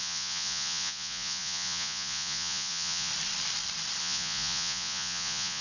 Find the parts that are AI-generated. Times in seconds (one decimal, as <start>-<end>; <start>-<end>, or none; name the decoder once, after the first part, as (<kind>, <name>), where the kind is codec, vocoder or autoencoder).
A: 0.0-3.1 (vocoder, Vocos); 4.0-5.6